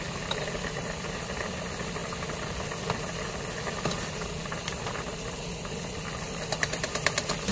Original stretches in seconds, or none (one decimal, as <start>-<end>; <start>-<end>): 0.0-7.5